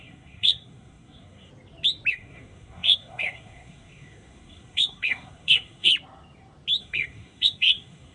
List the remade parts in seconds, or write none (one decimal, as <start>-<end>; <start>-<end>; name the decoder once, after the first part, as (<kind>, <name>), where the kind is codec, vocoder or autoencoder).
0.0-1.5 (codec, SNAC); 2.1-5.9; 6.8-8.1

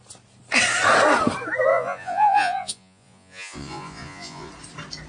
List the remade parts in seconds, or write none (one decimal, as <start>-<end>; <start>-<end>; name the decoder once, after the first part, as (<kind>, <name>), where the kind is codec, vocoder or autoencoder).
1.7-4.5 (vocoder, Vocos)

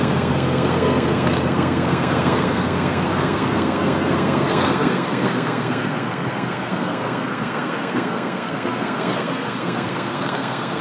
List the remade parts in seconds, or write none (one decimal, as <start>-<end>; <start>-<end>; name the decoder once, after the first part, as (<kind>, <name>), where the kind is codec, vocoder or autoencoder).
0.0-10.8 (codec, SNAC)

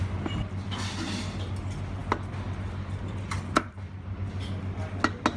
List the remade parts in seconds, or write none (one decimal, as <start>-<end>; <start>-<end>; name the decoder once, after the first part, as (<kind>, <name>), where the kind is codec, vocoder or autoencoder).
none

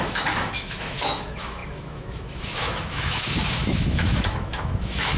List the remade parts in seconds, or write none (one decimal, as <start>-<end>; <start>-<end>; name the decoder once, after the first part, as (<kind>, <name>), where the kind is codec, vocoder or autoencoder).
0.0-5.2 (autoencoder, DAC-VAE)

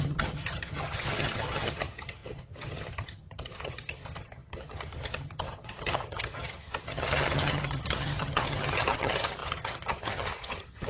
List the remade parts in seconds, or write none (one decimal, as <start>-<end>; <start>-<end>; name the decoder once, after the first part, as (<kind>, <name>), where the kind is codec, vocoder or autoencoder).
0.0-10.9 (vocoder, HiFi-GAN)